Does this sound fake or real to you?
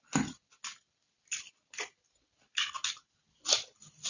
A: real